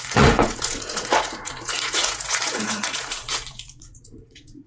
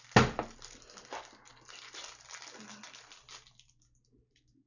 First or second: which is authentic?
second